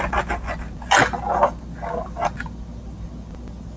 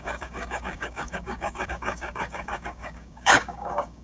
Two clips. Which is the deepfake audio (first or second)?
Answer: second